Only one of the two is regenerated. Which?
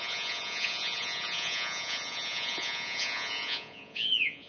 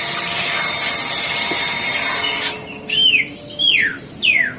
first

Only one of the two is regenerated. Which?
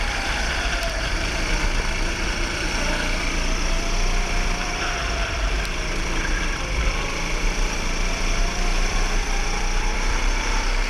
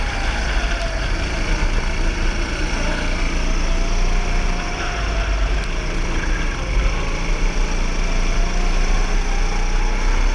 first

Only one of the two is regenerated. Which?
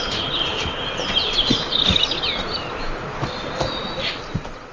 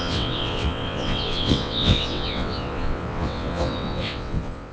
second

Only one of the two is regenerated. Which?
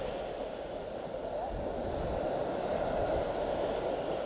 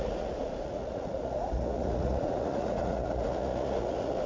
second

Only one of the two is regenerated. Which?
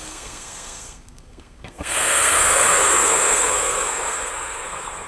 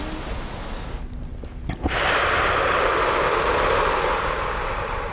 first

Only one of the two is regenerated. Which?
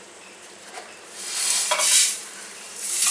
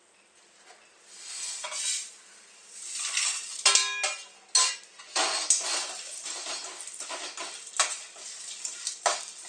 first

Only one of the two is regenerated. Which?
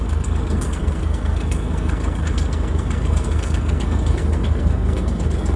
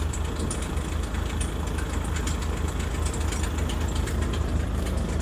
first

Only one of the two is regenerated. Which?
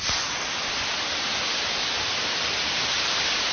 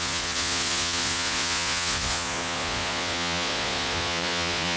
second